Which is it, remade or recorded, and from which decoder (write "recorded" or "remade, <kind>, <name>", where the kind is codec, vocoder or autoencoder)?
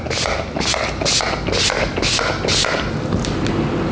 recorded